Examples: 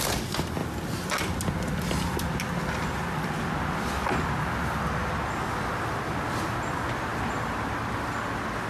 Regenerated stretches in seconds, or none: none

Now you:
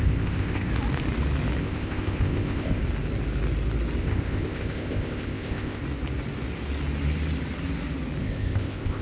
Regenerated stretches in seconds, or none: 0.0-0.7 (codec, ZipCodec); 1.6-2.8; 4.0-5.8; 8.2-9.0

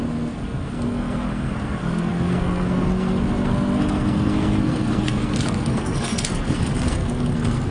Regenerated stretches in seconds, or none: 0.0-7.7 (codec, SNAC)